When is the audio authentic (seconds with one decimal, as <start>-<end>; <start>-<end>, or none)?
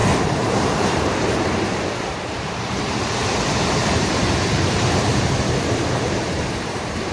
0.0-0.5